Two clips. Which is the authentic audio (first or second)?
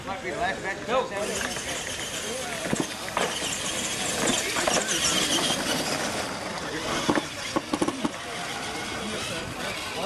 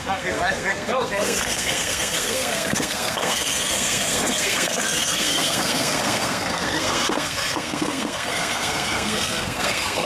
first